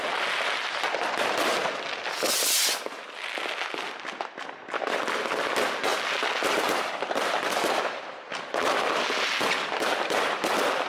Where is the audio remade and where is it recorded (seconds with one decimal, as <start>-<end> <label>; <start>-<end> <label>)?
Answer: 0.0-1.6 recorded; 1.6-2.5 remade; 2.5-5.9 recorded; 5.9-9.0 remade; 9.0-10.9 recorded